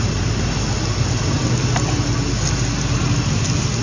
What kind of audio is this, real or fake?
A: real